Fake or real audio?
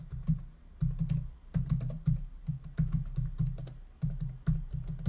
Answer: real